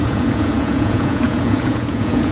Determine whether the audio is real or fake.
fake